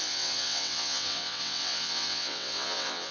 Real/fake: fake